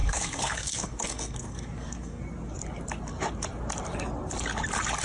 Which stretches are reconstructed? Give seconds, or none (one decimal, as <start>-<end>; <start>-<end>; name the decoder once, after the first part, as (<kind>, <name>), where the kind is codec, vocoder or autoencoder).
0.0-2.2 (codec, SNAC)